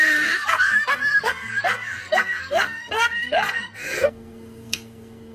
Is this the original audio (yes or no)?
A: no